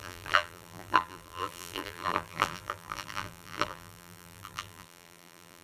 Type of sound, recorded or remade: remade